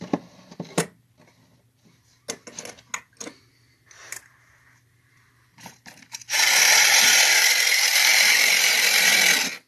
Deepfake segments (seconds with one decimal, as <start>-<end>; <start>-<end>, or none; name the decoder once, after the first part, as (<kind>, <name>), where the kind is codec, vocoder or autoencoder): 4.0-7.4 (vocoder, BigVGAN v2); 7.9-8.5